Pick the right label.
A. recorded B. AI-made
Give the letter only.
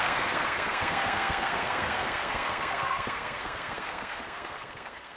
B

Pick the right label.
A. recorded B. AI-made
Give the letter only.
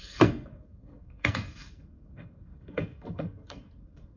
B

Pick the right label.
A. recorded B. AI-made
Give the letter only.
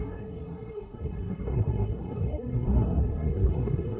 B